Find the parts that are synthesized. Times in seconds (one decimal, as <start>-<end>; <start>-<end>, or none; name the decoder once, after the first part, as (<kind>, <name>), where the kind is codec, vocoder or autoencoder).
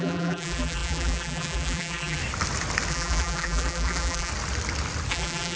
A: 0.0-2.2 (vocoder, BigVGAN v2); 2.9-4.3; 5.1-5.6